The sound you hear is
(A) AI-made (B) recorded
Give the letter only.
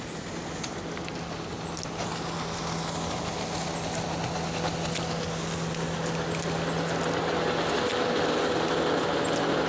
B